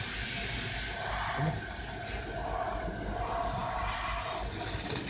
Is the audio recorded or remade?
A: recorded